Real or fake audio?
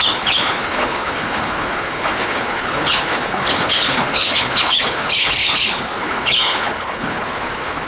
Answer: fake